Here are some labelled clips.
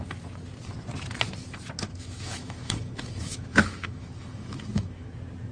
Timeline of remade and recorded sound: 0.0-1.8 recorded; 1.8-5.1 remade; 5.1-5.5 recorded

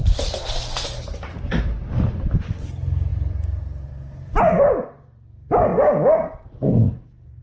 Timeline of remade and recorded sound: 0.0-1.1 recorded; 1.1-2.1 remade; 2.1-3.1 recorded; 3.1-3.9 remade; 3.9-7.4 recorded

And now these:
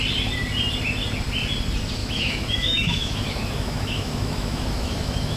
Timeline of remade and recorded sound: 0.0-2.0 recorded; 2.0-5.4 remade

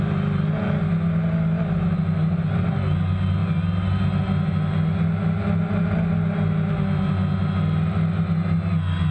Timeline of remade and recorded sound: 0.0-9.1 recorded